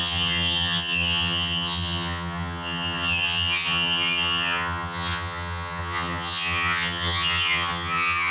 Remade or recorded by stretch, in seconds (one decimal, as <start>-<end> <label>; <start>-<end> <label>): 0.0-8.3 remade